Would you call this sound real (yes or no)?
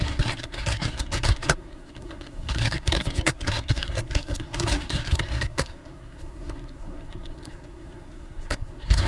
no